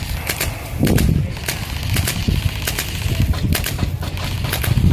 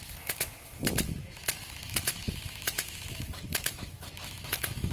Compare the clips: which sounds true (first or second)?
first